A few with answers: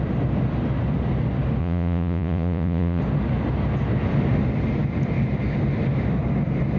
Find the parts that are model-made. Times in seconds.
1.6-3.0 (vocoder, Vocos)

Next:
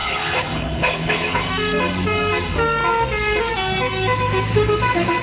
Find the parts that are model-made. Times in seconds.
0.0-1.5 (codec, HILCodec)

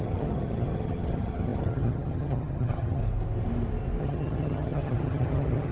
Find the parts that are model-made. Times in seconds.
0.0-3.0 (vocoder, HiFi-GAN); 4.0-5.7

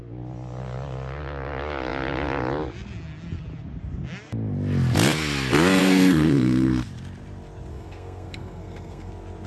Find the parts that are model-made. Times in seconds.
5.8-6.9 (codec, SNAC); 7.7-9.1